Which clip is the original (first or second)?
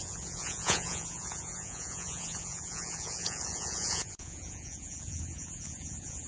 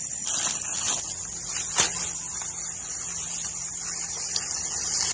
second